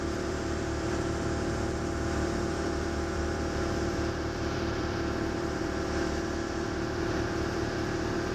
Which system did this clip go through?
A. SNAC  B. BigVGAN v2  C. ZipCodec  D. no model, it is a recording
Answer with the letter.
B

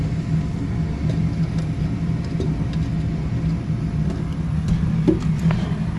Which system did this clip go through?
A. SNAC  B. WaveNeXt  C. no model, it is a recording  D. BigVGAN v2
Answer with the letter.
C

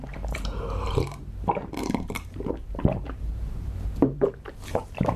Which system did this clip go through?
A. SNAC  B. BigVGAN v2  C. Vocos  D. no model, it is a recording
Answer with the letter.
B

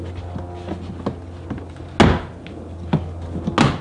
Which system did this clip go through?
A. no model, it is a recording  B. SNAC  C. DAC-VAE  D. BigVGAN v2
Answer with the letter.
A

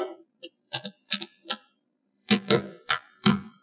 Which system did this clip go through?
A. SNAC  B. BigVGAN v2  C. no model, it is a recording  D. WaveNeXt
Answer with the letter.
B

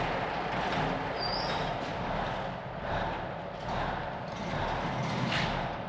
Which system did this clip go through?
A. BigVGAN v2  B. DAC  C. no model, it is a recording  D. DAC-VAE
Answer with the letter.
C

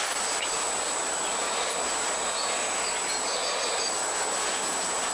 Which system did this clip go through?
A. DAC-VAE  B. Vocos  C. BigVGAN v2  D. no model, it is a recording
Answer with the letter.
D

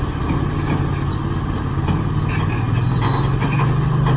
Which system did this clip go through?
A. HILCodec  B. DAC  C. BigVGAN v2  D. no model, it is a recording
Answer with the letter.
D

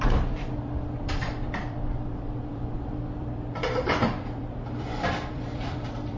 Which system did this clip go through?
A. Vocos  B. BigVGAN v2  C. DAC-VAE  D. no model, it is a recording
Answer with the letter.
B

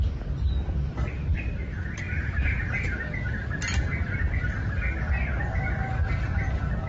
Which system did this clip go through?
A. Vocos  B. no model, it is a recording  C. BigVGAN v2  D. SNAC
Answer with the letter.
B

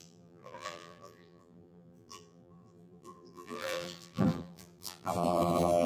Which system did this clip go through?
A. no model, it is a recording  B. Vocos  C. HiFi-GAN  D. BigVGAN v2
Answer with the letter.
D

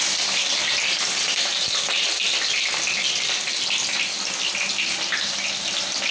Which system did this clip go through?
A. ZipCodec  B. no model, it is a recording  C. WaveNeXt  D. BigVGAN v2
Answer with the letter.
B